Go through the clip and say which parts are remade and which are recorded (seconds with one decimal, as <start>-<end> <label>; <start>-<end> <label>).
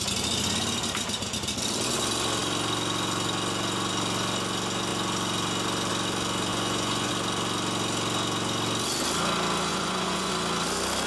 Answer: 0.0-6.5 recorded; 6.5-7.1 remade; 7.1-9.7 recorded; 9.7-10.3 remade; 10.3-11.1 recorded